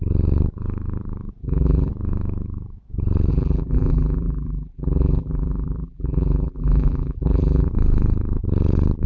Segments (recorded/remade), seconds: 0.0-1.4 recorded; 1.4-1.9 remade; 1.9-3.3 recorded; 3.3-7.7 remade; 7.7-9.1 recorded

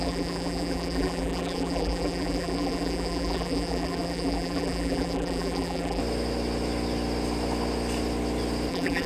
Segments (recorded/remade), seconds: 0.0-6.0 remade; 6.0-8.7 recorded; 8.7-9.1 remade

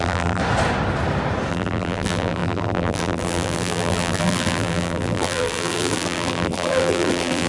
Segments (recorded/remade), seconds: 0.0-0.4 remade; 0.4-1.5 recorded; 1.5-7.5 remade

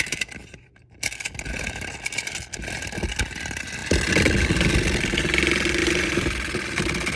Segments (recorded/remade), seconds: 0.0-0.4 recorded; 0.4-1.6 remade; 1.6-5.8 recorded; 5.8-7.2 remade